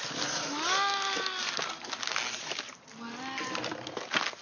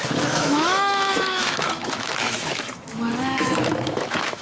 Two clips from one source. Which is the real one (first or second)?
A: first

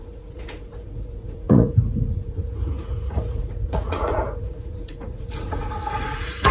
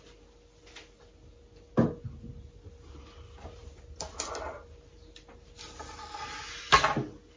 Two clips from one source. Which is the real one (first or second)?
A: second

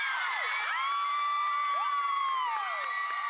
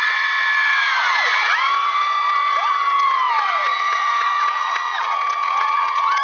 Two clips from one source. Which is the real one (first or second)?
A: first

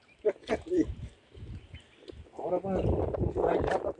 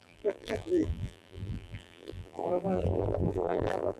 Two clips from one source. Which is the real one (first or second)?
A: first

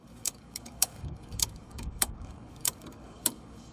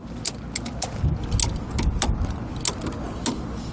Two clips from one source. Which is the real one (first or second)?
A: second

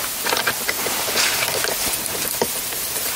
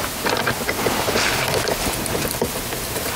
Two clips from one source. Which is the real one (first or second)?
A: second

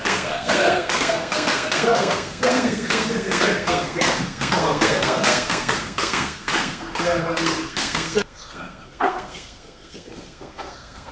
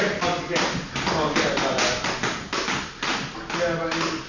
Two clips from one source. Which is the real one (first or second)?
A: second